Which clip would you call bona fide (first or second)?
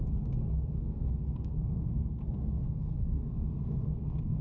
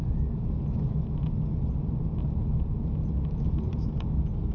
second